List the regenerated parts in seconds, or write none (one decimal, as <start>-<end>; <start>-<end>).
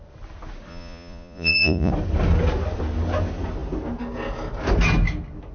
0.7-1.9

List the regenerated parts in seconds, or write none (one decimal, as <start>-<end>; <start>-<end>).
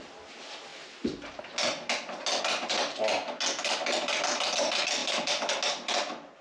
none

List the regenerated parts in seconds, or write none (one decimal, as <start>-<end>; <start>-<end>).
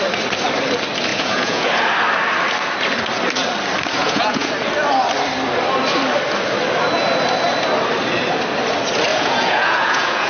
1.1-1.7; 4.0-4.5; 9.1-10.3